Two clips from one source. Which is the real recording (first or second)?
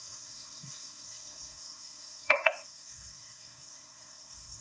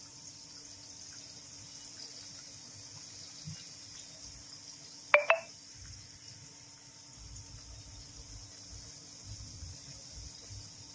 second